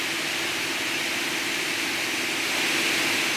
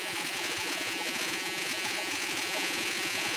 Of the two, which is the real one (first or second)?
first